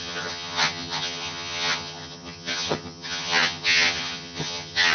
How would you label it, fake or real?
fake